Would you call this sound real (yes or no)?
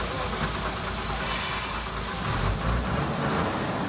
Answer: yes